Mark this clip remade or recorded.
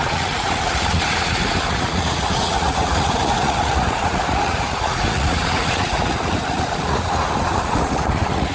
remade